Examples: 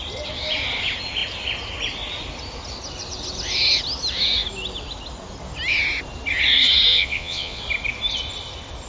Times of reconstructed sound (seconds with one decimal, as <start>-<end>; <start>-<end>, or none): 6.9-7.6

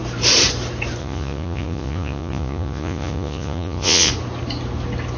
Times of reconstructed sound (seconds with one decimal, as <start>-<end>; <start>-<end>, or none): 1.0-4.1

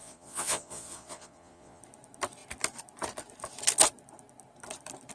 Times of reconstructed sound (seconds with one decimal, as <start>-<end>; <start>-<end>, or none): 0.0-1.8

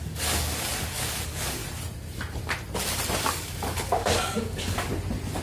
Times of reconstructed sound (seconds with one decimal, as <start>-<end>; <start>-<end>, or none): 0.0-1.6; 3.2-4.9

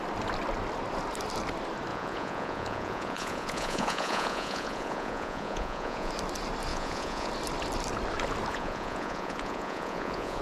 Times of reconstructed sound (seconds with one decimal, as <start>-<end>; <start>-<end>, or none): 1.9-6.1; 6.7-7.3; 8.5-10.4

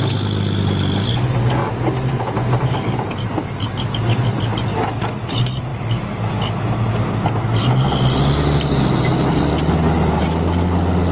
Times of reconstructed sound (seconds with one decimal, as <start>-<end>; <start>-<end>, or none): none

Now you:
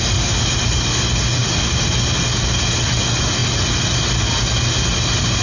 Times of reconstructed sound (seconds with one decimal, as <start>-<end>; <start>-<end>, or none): none